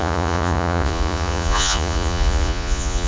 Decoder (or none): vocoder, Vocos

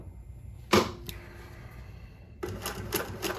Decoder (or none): none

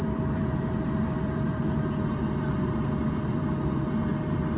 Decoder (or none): vocoder, BigVGAN v2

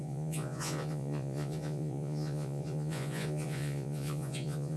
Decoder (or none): vocoder, Vocos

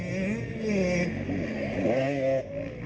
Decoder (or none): none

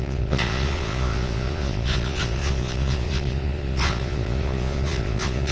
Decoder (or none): vocoder, Vocos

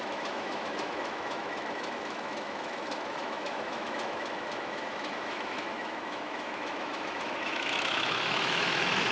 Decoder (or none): autoencoder, DAC-VAE